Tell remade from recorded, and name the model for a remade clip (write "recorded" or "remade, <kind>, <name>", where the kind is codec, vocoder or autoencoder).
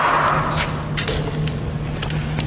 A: recorded